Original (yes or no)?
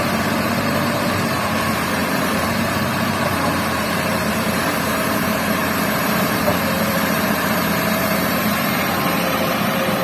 no